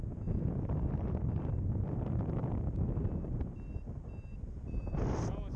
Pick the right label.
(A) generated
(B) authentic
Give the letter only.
B